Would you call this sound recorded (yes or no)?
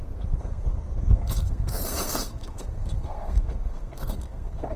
no